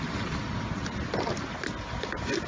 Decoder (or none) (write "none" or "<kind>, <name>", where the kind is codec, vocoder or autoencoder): none